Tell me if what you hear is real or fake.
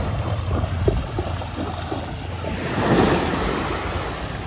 real